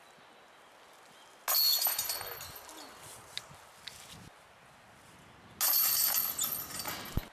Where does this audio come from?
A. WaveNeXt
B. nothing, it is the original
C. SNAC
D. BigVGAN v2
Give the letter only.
B